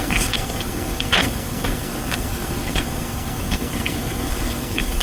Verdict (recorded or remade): remade